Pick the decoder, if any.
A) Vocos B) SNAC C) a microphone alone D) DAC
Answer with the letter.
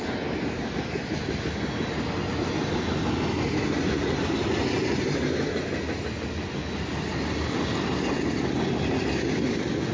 C